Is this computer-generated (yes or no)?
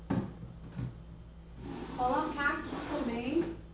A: no